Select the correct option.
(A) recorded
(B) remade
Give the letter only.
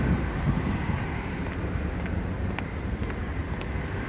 A